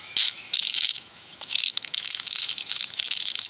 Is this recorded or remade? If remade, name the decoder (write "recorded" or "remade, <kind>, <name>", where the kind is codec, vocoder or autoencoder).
remade, autoencoder, DAC-VAE